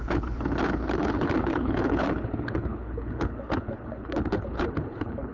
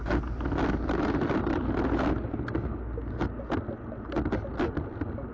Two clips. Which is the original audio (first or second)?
second